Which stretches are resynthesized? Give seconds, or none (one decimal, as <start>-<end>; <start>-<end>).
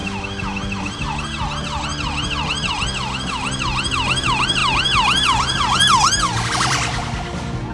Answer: none